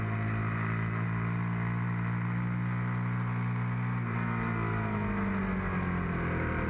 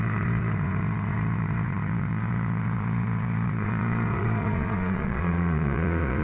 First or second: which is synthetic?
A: second